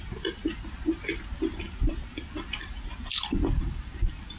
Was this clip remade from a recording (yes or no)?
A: no